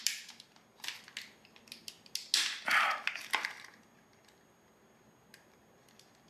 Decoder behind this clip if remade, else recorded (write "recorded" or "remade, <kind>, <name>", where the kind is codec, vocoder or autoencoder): recorded